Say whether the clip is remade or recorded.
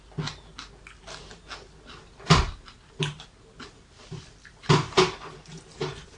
recorded